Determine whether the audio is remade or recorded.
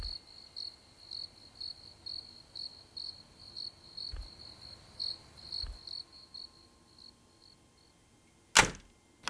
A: recorded